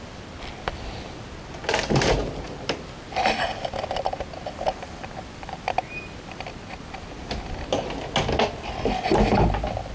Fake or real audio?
real